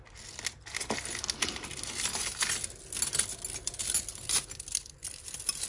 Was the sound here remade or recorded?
recorded